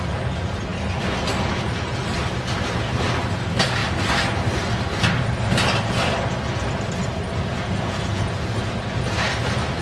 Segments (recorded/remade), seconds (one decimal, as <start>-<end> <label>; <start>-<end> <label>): 0.0-7.5 recorded; 7.5-8.3 remade; 8.3-9.8 recorded